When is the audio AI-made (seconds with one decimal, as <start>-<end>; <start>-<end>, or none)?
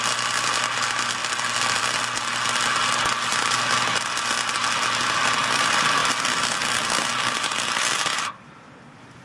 none